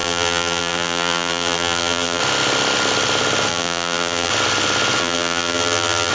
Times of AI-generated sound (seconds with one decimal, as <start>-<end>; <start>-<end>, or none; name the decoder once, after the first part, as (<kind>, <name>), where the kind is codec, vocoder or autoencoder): 0.0-2.2 (vocoder, BigVGAN v2); 3.5-4.3; 5.0-6.1

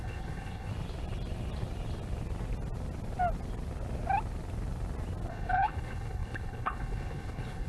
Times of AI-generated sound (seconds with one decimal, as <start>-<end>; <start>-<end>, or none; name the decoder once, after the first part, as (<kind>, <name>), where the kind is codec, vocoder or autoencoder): 0.0-0.7 (codec, HILCodec); 5.3-7.7

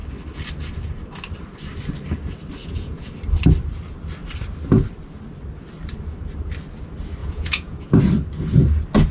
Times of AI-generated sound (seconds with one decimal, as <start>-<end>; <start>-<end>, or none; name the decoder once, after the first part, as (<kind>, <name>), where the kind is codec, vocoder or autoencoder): 2.6-3.1 (vocoder, Vocos); 7.2-7.9

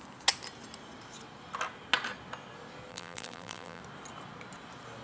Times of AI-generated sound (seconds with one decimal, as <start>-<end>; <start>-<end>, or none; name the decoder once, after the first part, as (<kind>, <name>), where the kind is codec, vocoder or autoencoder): 2.9-3.8 (vocoder, BigVGAN v2)